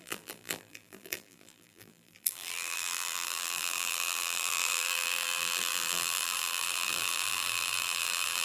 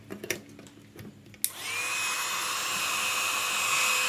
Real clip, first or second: second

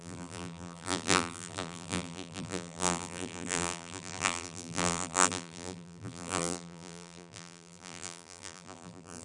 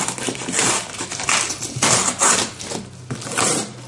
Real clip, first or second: second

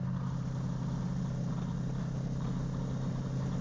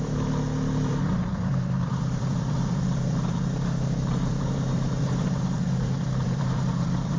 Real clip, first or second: first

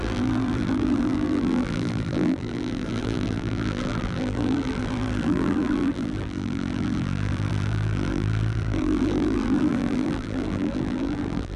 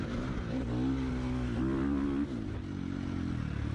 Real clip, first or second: second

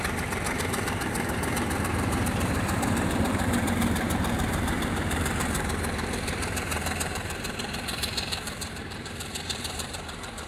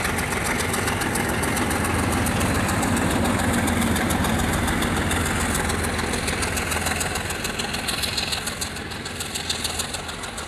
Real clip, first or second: second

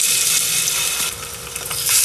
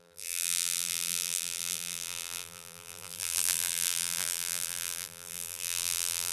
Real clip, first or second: first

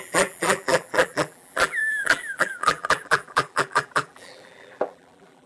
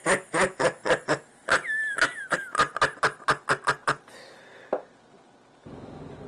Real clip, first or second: second